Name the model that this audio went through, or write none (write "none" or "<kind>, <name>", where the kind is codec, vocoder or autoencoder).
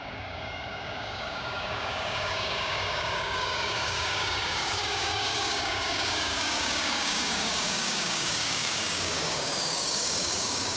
codec, DAC